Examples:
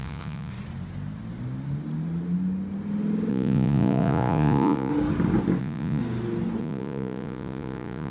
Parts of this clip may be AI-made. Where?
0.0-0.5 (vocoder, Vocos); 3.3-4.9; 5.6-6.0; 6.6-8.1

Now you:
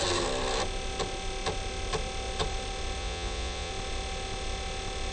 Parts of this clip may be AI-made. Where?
3.0-3.7 (vocoder, Vocos)

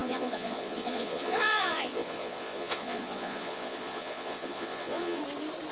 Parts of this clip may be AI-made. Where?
0.0-5.2 (vocoder, Vocos)

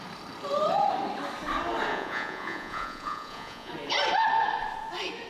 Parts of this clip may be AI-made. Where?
1.9-3.7 (vocoder, Vocos)